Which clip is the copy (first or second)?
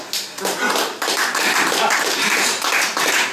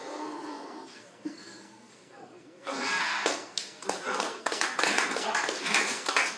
second